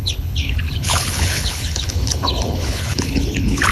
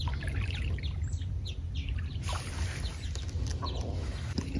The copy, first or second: first